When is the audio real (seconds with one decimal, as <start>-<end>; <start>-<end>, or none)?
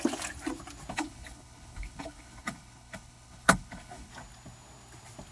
0.0-0.9; 4.1-5.3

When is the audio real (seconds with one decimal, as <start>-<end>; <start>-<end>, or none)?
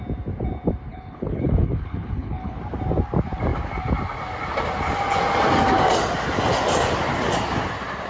0.0-0.9; 2.6-8.1